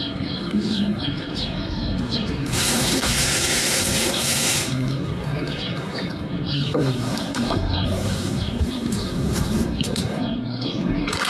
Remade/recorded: remade